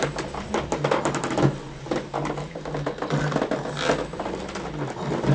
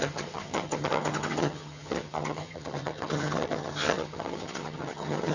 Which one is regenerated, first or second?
second